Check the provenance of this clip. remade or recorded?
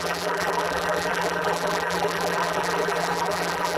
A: remade